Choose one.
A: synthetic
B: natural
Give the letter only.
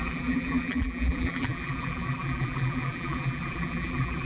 A